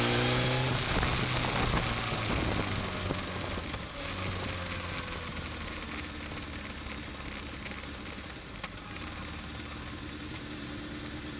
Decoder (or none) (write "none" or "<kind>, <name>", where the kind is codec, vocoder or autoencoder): none